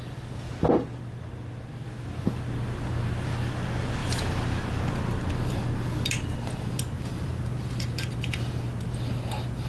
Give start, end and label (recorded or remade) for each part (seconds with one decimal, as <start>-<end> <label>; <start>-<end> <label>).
0.0-9.7 recorded